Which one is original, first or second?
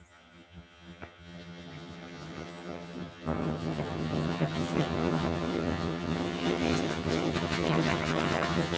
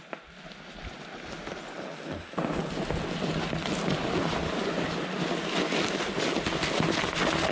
second